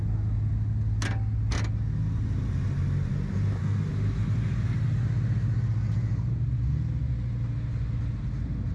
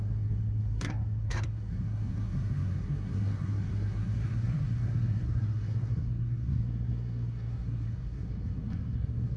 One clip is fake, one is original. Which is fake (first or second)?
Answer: second